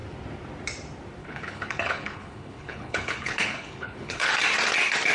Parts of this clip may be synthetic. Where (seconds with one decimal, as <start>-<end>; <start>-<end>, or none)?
1.2-4.3